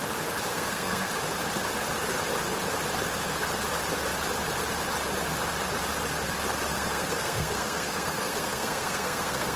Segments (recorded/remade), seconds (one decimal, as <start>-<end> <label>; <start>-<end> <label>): 0.0-0.5 recorded; 0.5-1.1 remade; 1.1-6.7 recorded; 6.7-9.6 remade